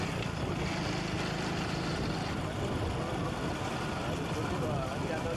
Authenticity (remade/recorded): recorded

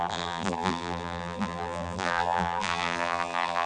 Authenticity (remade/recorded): remade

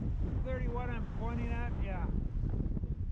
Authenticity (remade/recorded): recorded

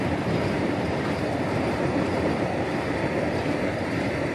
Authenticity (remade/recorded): remade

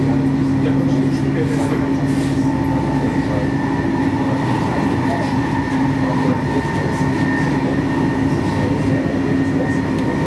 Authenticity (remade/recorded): recorded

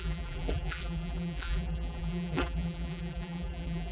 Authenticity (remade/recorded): remade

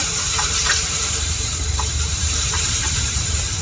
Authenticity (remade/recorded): remade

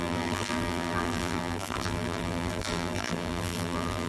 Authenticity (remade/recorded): remade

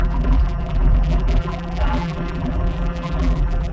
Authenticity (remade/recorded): remade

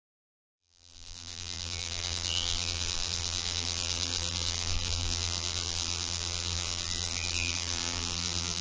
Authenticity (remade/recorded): remade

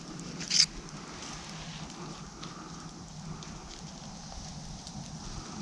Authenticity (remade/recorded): recorded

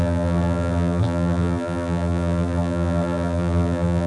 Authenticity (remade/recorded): remade